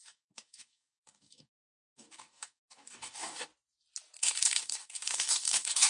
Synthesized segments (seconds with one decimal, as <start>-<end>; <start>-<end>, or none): 0.0-3.5; 4.2-5.9